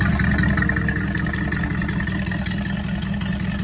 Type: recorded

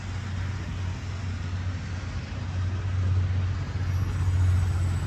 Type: recorded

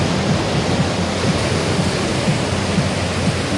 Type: recorded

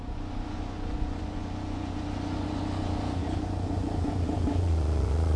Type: remade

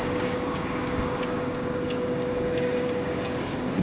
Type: remade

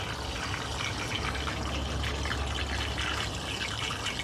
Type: recorded